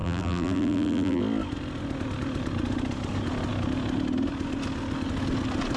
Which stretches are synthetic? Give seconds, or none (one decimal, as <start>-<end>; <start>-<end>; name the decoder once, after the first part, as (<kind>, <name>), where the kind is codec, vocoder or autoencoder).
0.0-1.2 (vocoder, BigVGAN v2)